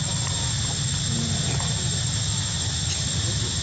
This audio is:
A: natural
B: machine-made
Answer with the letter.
A